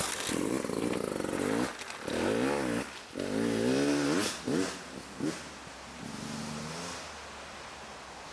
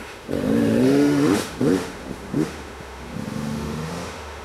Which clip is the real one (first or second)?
first